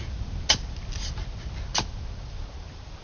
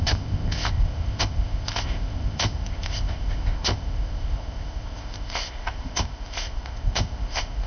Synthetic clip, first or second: second